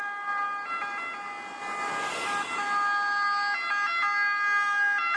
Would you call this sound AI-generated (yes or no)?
no